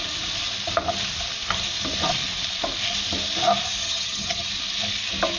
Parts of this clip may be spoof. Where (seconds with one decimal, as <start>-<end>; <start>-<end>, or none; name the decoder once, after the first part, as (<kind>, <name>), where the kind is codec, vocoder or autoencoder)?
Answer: 3.8-4.5 (vocoder, HiFi-GAN)